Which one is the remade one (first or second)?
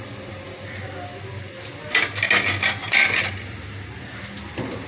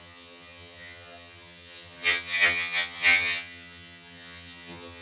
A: second